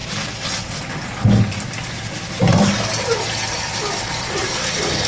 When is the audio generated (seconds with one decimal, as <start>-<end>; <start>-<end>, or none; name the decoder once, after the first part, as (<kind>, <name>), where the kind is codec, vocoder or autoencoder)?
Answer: 4.4-5.1 (vocoder, BigVGAN v2)